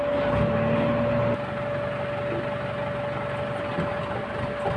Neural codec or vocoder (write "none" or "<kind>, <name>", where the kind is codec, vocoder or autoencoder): none